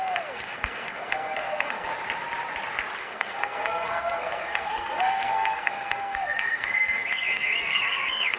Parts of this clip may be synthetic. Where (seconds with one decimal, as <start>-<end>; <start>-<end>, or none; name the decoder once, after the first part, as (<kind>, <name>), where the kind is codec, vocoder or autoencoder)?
0.0-1.9 (codec, SNAC); 3.0-8.4